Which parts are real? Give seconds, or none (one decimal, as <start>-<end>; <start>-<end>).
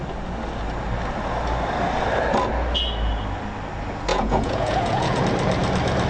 0.0-4.1; 5.2-6.1